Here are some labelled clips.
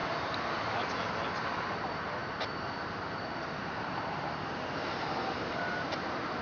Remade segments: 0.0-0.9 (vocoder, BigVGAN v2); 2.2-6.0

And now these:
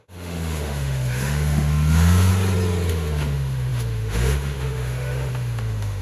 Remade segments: 0.0-2.3 (autoencoder, DAC-VAE); 2.9-6.0

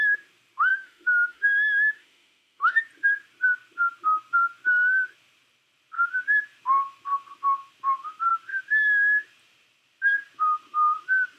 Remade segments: 0.7-2.8 (autoencoder, DAC-VAE)